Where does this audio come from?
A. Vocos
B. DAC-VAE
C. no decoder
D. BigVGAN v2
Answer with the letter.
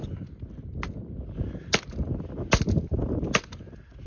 C